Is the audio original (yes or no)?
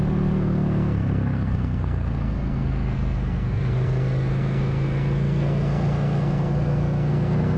no